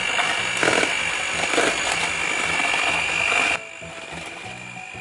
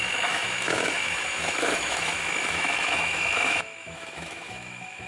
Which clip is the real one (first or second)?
first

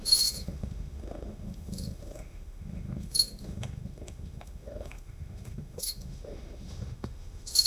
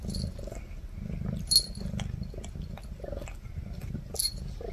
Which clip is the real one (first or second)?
second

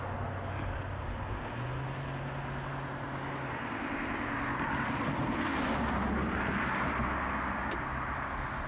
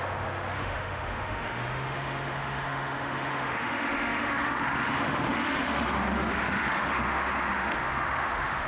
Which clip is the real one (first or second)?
first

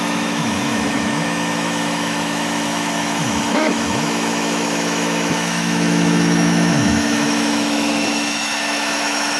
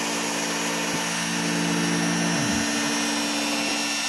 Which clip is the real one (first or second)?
second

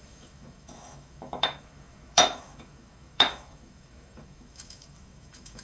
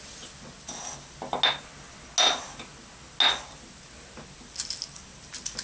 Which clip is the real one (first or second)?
second